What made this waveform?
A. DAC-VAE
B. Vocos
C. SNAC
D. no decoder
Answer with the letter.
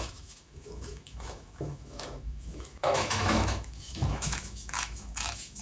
A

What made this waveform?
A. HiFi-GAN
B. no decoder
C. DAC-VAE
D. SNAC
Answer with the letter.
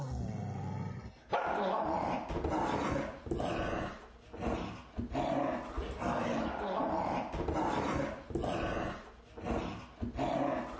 B